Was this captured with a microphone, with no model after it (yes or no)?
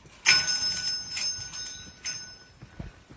yes